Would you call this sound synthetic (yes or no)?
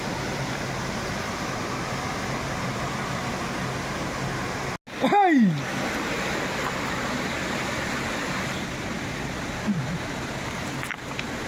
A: no